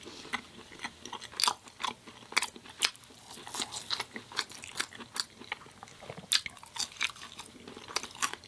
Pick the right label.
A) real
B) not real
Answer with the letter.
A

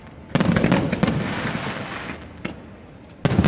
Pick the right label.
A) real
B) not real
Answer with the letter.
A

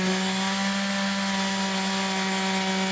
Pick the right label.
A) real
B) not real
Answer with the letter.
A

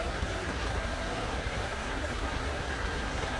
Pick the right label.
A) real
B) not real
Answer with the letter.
B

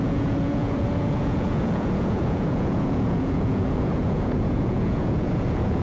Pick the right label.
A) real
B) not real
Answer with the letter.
B